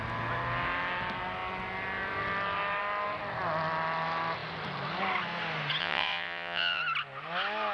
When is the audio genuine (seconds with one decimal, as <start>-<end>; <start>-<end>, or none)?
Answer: 0.0-5.8; 6.8-7.7